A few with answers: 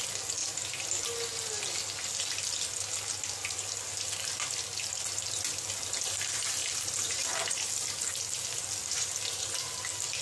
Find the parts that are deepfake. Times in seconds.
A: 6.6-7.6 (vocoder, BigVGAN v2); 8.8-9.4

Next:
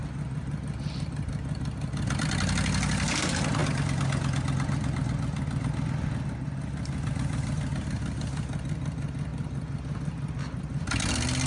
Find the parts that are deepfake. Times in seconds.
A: 9.3-11.1 (vocoder, BigVGAN v2)

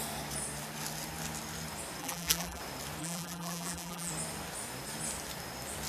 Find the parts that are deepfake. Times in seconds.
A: 2.0-2.6 (vocoder, BigVGAN v2); 3.0-4.1

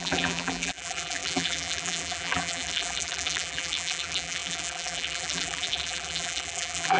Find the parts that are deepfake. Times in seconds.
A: 0.0-7.0 (vocoder, BigVGAN v2)